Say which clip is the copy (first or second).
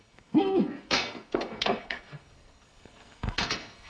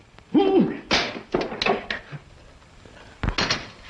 first